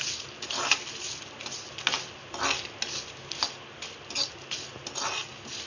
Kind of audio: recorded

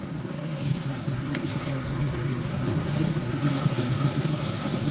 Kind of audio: remade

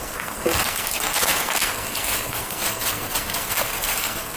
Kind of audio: remade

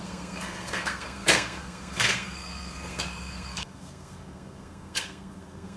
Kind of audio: remade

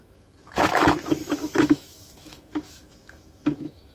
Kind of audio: remade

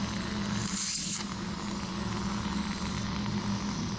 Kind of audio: recorded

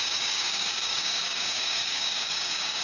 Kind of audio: remade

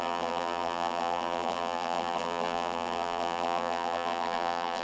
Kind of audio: remade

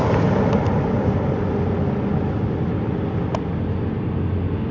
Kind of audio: recorded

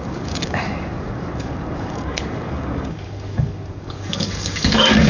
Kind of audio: remade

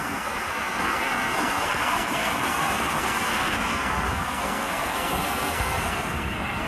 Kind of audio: remade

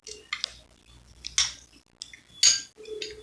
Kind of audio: recorded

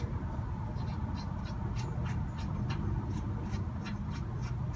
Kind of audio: recorded